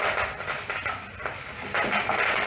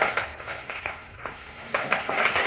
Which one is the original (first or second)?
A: first